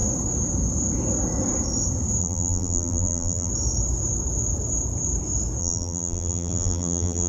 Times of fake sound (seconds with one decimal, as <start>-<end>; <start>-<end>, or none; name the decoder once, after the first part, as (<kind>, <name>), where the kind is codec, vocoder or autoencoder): 2.2-3.5 (vocoder, BigVGAN v2); 5.6-7.3